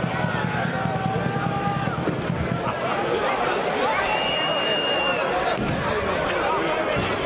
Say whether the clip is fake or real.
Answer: real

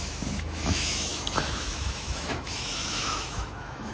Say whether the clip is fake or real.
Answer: fake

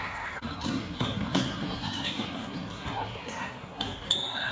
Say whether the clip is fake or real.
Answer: fake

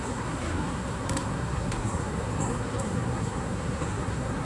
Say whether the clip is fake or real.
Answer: fake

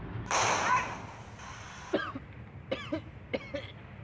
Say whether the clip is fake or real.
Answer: real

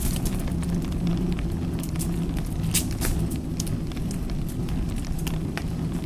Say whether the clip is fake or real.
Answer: real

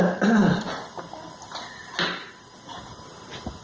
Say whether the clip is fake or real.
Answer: real